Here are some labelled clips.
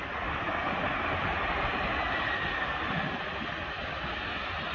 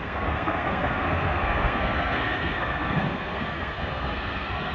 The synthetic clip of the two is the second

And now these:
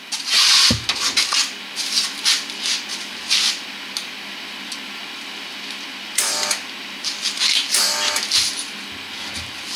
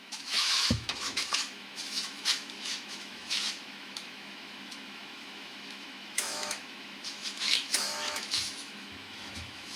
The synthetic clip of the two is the second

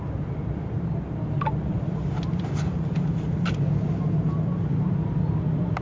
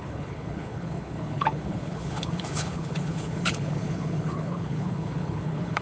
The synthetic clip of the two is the second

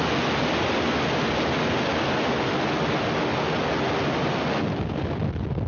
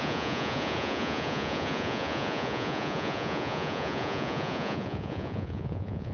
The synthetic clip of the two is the second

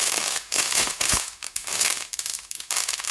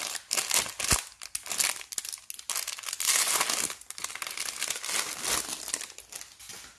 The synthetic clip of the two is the first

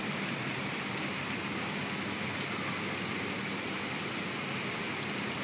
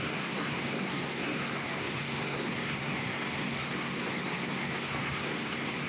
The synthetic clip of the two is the second